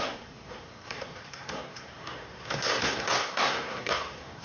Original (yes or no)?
no